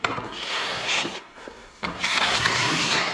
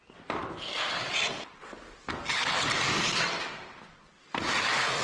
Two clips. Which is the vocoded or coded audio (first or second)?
first